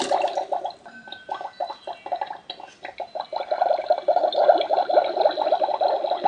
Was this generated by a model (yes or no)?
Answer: no